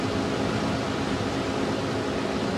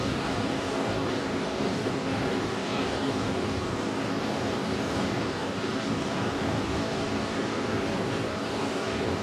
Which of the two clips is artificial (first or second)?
second